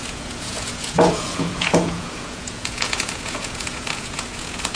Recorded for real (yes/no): no